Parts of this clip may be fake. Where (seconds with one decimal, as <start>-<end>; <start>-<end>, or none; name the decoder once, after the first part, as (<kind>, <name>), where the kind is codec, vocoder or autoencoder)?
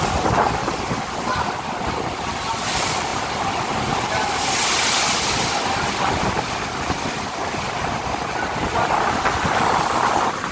none